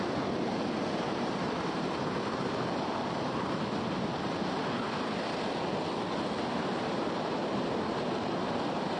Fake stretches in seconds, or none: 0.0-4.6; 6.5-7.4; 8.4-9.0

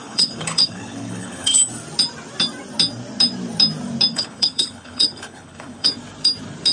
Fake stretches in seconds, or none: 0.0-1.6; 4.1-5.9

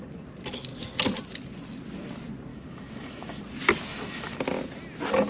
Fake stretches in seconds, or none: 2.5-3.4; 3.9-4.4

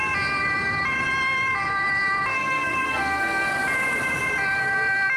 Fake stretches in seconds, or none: 2.3-3.5

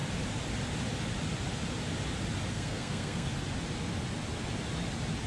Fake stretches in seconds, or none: 2.5-3.3